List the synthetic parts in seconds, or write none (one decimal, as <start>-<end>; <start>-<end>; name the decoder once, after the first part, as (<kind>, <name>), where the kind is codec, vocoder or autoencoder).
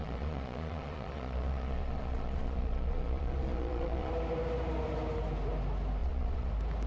0.0-4.1 (vocoder, Vocos); 6.0-6.5